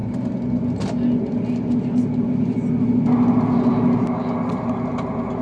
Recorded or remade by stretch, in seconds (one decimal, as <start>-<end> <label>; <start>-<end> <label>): 0.0-5.4 recorded